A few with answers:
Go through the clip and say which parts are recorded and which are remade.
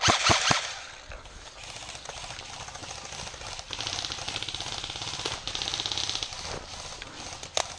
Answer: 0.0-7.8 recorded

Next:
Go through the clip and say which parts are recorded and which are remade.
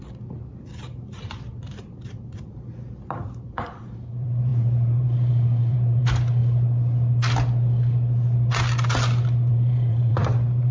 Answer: 0.0-6.4 remade; 6.4-9.5 recorded; 9.5-10.7 remade